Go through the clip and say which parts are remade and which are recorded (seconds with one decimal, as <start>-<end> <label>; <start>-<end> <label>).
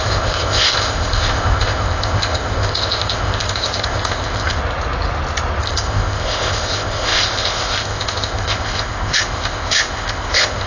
0.0-4.6 remade; 4.6-5.6 recorded; 5.6-10.7 remade